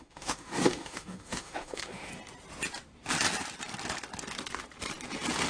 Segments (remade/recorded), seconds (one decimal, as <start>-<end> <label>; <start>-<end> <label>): 0.0-2.1 remade; 2.1-5.5 recorded